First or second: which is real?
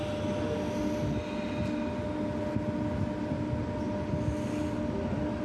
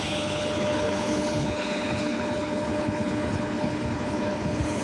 first